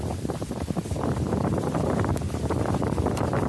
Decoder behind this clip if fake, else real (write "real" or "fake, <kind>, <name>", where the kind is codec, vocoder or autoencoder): fake, vocoder, BigVGAN v2